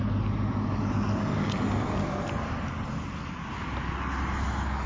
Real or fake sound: real